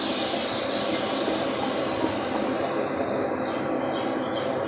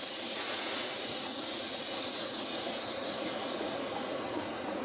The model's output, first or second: second